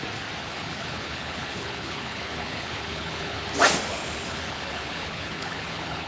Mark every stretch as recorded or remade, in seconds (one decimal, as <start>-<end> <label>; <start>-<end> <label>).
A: 0.0-0.4 recorded; 0.4-3.4 remade; 3.4-3.9 recorded; 3.9-6.1 remade